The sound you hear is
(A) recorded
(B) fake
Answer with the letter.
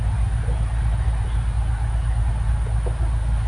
A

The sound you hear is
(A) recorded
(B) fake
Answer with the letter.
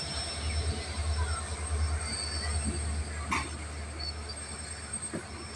A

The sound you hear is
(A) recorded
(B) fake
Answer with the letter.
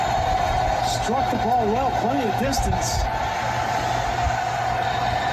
A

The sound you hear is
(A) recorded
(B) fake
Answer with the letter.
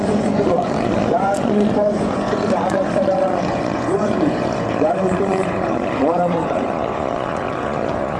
B